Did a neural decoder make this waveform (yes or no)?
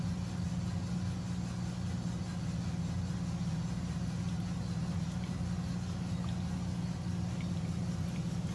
no